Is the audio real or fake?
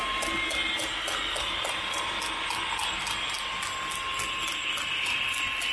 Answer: real